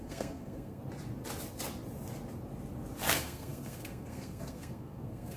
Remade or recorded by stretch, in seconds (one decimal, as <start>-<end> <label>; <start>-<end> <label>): 0.0-0.8 remade; 0.8-3.1 recorded; 3.1-5.4 remade